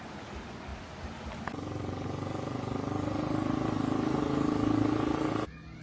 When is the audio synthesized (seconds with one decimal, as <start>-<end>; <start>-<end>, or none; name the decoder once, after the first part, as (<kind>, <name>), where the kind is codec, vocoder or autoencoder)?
none